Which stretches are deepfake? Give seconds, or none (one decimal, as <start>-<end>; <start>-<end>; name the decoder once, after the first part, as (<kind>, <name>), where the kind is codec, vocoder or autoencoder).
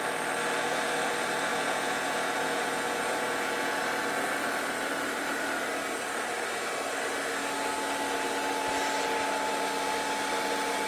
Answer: 1.5-3.8 (vocoder, Vocos)